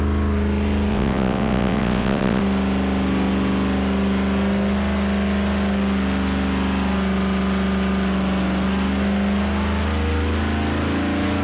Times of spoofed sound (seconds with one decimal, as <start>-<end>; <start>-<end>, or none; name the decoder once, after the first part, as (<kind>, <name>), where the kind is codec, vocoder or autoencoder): 0.9-2.4 (vocoder, WaveNeXt)